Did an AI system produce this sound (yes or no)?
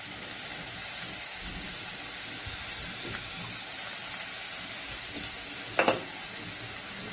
no